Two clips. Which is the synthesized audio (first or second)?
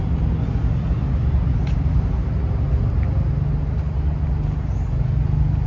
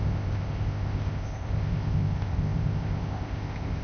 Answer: second